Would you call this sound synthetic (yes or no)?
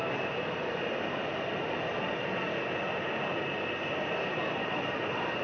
no